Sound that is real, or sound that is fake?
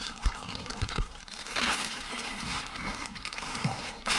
fake